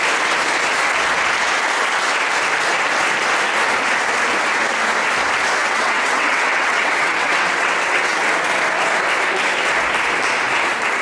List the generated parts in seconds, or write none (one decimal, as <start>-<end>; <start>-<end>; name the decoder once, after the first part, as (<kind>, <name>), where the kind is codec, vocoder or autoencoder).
5.6-8.3 (vocoder, WaveNeXt)